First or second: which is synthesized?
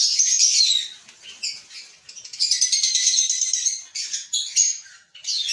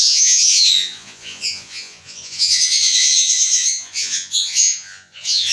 second